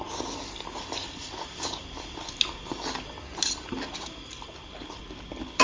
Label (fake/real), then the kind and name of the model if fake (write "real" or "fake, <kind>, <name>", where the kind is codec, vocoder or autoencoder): real